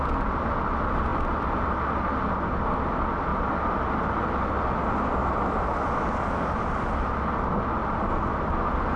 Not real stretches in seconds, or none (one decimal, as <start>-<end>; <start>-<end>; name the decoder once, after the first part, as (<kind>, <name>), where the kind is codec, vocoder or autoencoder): 1.1-2.2 (vocoder, BigVGAN v2); 3.3-4.5; 7.8-8.3